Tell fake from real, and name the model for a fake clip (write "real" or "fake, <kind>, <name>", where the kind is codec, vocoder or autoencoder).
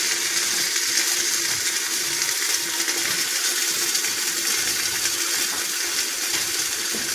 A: real